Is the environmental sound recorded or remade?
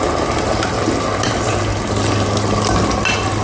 recorded